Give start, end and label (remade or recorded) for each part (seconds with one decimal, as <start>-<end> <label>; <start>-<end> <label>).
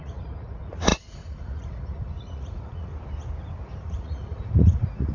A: 0.0-2.9 remade; 2.9-3.7 recorded; 3.7-5.1 remade